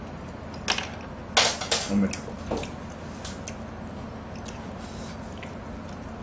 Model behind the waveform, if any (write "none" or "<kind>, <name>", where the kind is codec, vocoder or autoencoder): none